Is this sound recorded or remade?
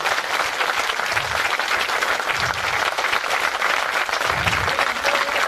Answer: recorded